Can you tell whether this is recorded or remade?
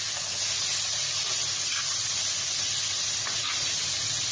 recorded